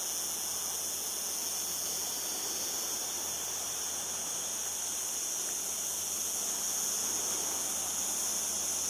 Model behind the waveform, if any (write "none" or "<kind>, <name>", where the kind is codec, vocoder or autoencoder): none